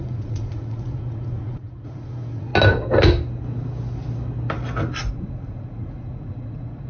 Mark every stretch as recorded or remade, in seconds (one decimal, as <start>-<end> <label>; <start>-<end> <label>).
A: 0.0-2.5 remade; 2.5-5.1 recorded; 5.1-6.9 remade